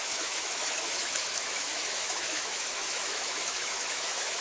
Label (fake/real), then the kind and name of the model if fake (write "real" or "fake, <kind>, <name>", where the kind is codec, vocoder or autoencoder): fake, autoencoder, DAC-VAE